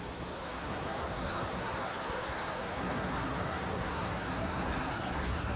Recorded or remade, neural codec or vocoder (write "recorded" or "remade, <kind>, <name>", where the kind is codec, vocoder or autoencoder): remade, codec, SNAC